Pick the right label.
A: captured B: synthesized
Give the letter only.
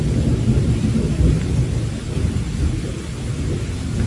A